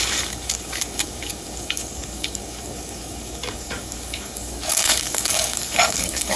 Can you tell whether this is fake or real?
fake